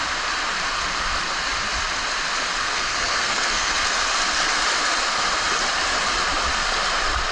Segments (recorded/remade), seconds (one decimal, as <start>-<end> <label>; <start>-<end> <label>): 0.0-2.6 recorded; 2.6-3.7 remade; 3.7-7.3 recorded